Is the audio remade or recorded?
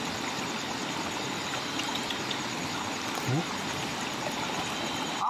recorded